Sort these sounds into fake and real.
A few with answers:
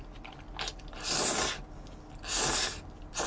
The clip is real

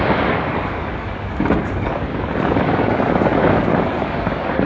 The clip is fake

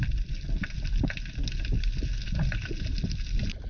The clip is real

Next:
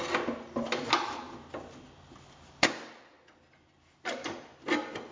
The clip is real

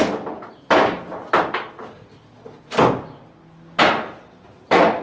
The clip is real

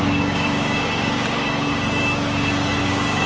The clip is fake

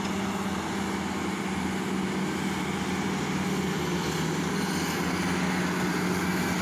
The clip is real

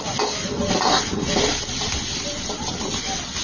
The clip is real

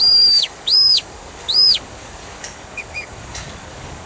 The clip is fake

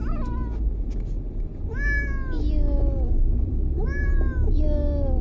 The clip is real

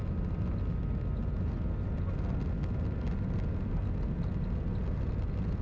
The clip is real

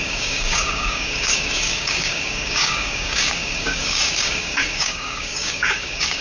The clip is fake